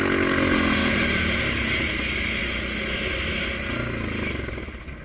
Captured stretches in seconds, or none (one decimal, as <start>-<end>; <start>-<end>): 0.0-0.8; 1.4-5.0